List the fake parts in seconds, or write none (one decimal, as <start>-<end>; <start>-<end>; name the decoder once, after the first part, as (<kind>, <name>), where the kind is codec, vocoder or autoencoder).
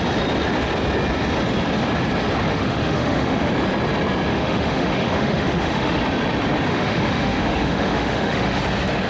2.5-3.5 (autoencoder, DAC-VAE); 4.3-6.0; 6.7-8.6